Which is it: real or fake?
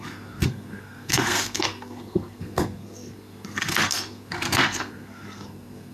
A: fake